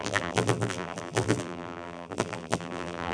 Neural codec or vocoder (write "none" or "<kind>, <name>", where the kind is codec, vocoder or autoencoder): vocoder, BigVGAN v2